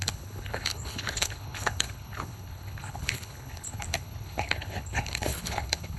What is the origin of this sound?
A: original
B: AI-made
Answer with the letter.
B